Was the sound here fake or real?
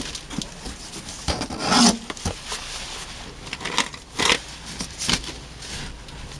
real